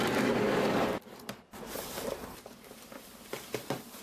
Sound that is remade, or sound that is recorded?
remade